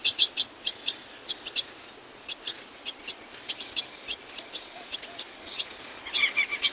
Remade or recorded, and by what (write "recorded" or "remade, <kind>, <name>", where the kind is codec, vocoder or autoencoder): recorded